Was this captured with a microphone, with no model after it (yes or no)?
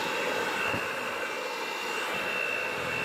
yes